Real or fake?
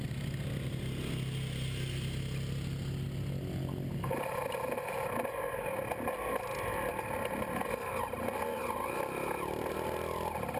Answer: real